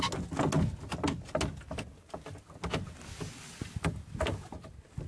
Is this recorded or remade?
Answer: recorded